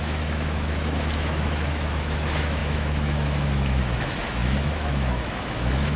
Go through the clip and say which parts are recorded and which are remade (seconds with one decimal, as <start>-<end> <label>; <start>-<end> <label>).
0.0-6.0 remade